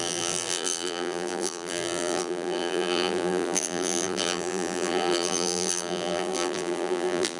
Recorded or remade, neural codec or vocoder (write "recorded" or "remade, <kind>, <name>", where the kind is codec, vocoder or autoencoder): remade, vocoder, BigVGAN v2